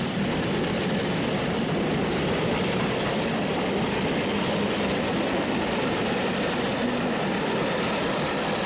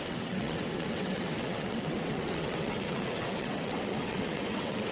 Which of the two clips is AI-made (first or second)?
second